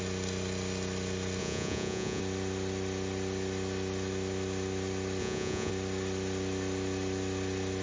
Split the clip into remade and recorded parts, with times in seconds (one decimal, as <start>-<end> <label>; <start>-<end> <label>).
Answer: 0.0-1.4 recorded; 1.4-2.2 remade; 2.2-5.2 recorded; 5.2-5.7 remade; 5.7-7.8 recorded